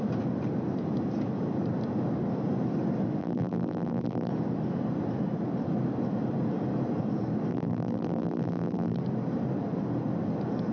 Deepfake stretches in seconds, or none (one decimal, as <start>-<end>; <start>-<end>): 3.2-4.3; 7.5-9.0